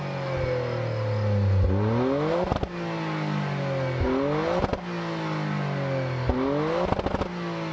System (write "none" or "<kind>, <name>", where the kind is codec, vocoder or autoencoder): none